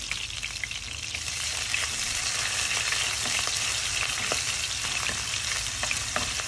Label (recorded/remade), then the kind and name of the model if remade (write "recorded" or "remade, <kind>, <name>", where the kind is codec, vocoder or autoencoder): recorded